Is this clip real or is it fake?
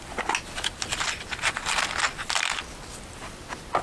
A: real